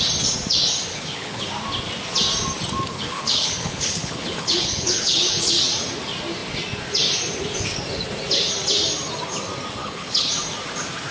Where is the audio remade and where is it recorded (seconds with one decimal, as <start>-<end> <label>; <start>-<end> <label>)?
0.0-0.9 recorded; 0.9-1.5 remade; 1.5-2.9 recorded; 2.9-5.3 remade; 5.3-9.8 recorded; 9.8-10.3 remade; 10.3-11.1 recorded